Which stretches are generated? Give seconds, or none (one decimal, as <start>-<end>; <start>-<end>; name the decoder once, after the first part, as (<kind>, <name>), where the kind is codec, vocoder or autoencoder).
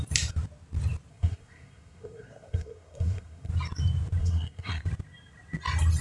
1.1-3.5 (codec, SNAC); 4.2-4.8